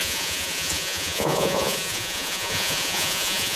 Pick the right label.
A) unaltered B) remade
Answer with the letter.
B